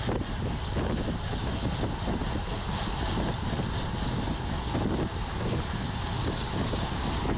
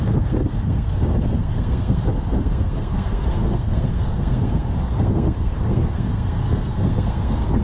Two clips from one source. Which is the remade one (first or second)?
second